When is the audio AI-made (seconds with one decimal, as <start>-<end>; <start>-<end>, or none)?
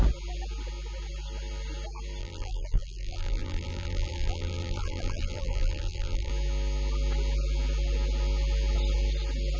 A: 2.2-6.3